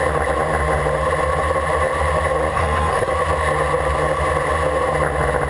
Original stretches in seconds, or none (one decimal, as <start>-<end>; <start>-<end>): 0.0-2.5; 3.1-5.5

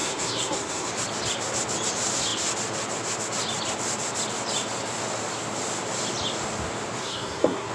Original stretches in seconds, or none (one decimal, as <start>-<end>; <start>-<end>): 0.9-7.0

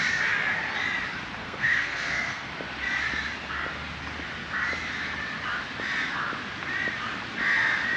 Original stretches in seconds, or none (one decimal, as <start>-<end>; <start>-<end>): 0.0-1.4; 2.5-8.0